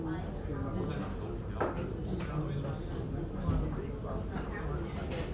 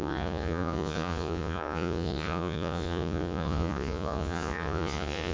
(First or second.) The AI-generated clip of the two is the second